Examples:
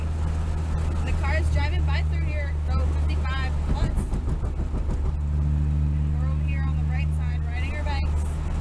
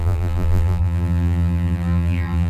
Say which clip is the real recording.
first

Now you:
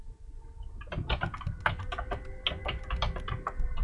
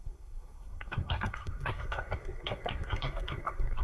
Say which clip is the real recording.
first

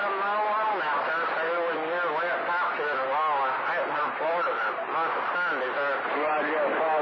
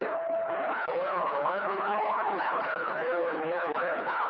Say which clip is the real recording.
first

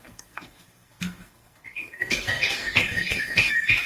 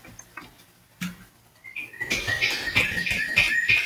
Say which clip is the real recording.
second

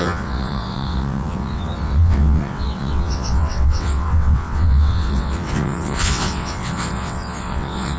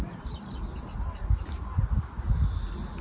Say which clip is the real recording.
second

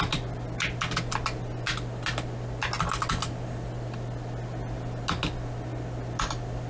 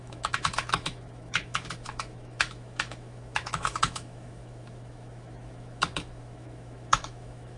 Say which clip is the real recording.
first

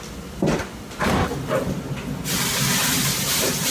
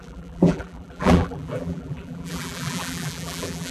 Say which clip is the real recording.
first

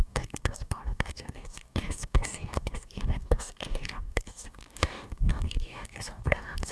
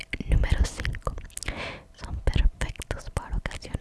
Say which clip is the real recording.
second